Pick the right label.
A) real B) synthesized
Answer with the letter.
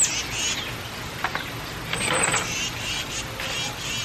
A